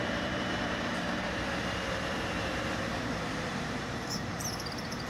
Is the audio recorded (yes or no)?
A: no